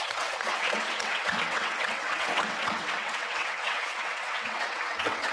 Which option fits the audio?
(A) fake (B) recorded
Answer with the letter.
A